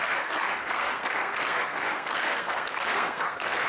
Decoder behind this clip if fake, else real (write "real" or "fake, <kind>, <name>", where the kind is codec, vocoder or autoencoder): fake, codec, SNAC